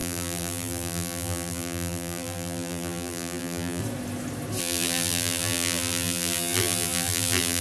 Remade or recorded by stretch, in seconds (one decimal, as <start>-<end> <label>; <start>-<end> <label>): 0.0-3.8 remade; 3.8-4.6 recorded; 4.6-7.6 remade